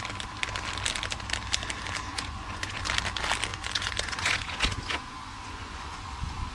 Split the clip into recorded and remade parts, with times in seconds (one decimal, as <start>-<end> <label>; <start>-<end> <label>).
0.0-2.1 recorded; 2.1-2.8 remade; 2.8-3.5 recorded; 3.5-6.5 remade